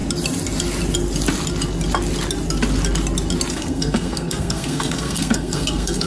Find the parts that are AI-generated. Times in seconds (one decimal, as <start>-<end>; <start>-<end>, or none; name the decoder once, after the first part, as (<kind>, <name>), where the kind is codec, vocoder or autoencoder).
3.5-6.1 (codec, SNAC)